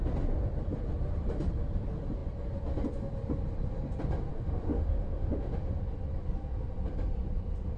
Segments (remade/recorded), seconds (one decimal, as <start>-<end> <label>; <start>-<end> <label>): 0.0-4.3 recorded; 4.3-5.8 remade; 5.8-7.8 recorded